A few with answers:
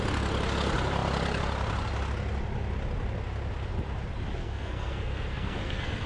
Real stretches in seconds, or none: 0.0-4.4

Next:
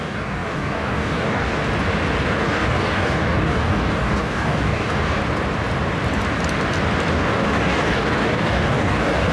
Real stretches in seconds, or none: 1.6-2.3; 5.2-7.1